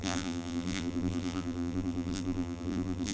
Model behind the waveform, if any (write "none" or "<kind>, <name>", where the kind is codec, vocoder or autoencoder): vocoder, BigVGAN v2